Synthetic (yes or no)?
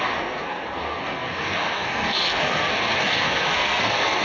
yes